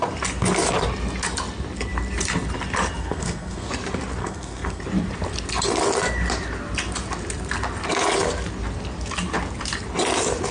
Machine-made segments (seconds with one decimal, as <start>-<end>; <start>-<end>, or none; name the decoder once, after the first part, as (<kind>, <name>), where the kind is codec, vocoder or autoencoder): 3.0-3.7 (codec, SNAC); 4.2-4.8